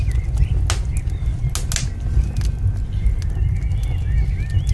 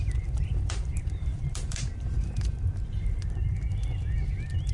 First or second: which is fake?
second